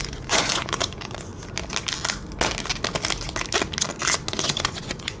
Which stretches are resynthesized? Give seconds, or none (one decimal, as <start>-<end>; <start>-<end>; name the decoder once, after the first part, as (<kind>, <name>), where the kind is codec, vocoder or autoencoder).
0.0-1.3 (vocoder, Vocos); 4.4-5.2